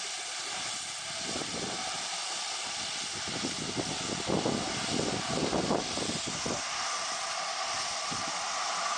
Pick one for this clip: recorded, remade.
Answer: recorded